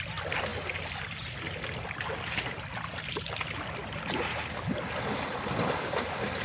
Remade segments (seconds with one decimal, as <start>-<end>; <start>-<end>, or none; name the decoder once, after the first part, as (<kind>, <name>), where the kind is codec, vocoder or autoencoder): none